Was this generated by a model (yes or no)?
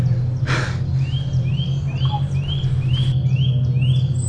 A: no